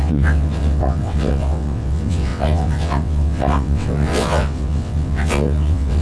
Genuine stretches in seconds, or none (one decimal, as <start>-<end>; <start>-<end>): none